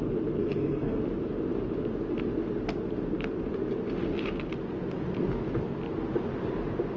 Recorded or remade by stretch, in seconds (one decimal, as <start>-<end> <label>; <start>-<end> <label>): 0.0-0.4 recorded; 0.4-1.0 remade; 1.0-7.0 recorded